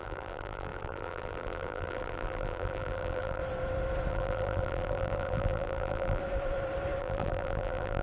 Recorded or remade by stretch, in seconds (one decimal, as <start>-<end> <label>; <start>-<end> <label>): 0.0-3.4 remade; 3.4-4.1 recorded; 4.1-6.2 remade; 6.2-7.0 recorded; 7.0-8.0 remade